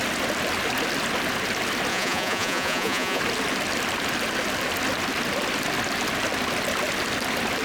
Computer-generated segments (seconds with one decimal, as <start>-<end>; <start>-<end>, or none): 1.9-3.2